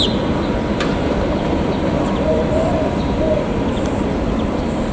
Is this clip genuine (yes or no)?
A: yes